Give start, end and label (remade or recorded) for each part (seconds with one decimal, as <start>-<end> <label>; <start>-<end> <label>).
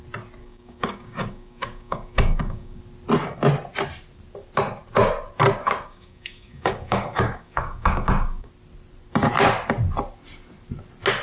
0.0-0.4 recorded; 0.4-2.8 remade; 2.8-5.6 recorded; 5.6-8.5 remade; 8.5-11.2 recorded